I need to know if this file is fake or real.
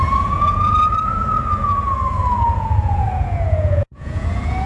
fake